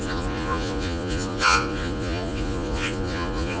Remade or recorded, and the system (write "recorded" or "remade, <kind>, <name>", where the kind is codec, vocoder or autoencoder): remade, vocoder, Vocos